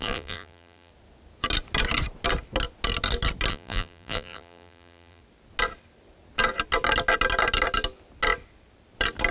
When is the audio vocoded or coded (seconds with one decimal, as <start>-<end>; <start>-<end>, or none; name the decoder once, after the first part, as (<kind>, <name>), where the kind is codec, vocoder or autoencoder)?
0.0-0.9 (vocoder, BigVGAN v2); 3.5-5.2